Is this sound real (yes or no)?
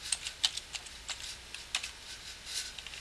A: yes